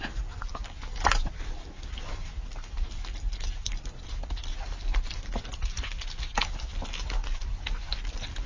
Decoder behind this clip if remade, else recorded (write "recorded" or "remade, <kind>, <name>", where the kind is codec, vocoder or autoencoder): recorded